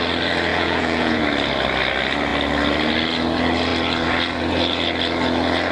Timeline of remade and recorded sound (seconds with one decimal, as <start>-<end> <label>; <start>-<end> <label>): 0.0-0.5 recorded; 0.5-1.2 remade; 1.2-5.7 recorded